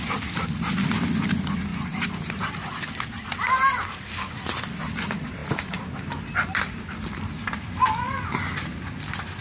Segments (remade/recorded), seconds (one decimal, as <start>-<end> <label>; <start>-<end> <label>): 0.0-1.7 recorded; 1.7-2.3 remade; 2.3-9.4 recorded